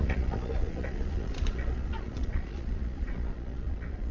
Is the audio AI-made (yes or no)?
yes